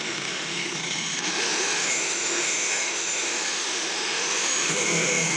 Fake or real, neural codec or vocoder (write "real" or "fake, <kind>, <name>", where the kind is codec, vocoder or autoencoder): fake, autoencoder, DAC-VAE